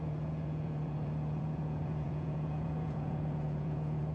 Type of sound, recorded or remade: remade